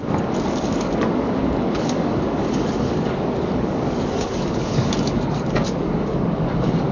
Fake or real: fake